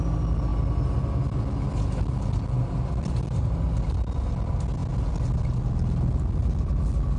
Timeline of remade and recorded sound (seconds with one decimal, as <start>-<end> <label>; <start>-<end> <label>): 0.0-7.2 recorded